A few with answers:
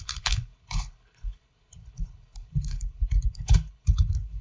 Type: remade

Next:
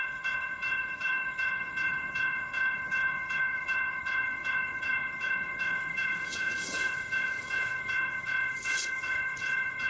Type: remade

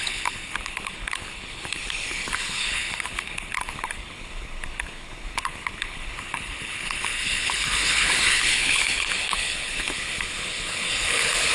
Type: remade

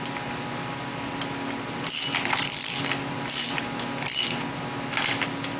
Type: recorded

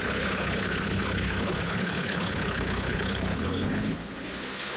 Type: remade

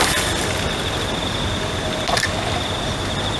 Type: recorded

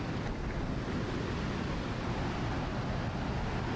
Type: recorded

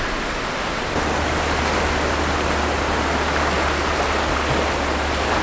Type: recorded